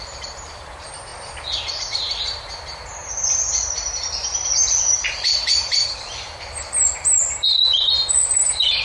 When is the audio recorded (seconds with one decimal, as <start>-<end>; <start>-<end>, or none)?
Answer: 1.1-1.8